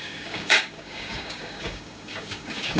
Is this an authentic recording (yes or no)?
no